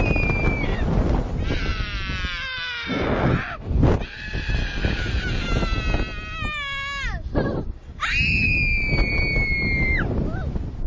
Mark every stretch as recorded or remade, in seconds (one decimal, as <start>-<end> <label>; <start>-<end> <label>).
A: 0.0-10.9 recorded